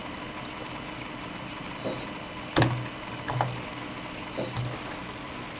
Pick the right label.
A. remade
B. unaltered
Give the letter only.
B